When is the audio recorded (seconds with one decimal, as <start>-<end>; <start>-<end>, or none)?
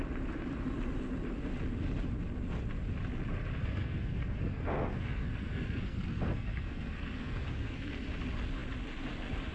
0.0-3.6; 7.9-9.5